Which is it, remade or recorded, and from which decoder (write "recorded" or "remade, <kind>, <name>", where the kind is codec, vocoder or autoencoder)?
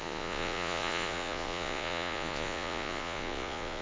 remade, vocoder, Vocos